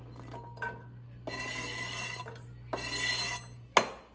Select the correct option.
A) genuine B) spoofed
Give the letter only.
A